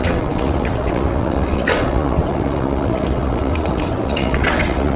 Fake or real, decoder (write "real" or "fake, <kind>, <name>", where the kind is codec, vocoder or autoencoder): fake, vocoder, WaveNeXt